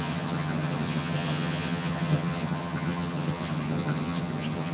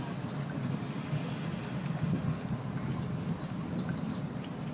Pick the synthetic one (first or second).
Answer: first